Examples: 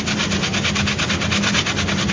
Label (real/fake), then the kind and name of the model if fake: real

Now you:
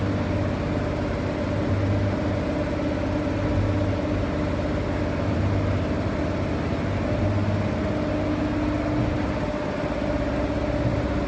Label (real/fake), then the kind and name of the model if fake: real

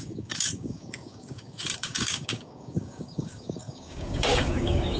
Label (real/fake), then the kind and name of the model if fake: fake, codec, DAC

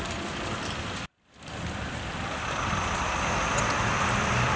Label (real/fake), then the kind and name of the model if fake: real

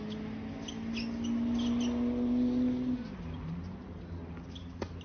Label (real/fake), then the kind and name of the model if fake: real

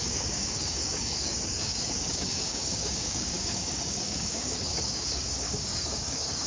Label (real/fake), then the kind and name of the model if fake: fake, codec, DAC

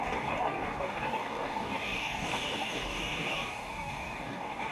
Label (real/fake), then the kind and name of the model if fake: fake, codec, DAC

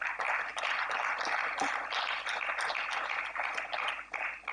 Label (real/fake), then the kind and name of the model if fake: real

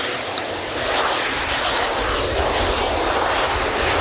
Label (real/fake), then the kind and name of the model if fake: real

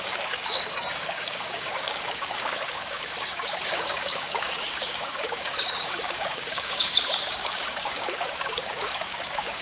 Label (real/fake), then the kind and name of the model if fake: fake, codec, DAC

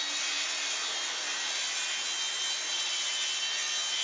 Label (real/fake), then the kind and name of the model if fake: real